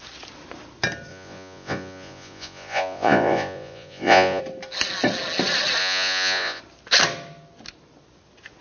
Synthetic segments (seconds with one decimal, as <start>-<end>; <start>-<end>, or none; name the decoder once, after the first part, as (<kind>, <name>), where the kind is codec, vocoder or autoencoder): 1.1-4.4 (vocoder, Vocos); 5.8-6.6